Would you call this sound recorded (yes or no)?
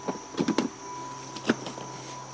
yes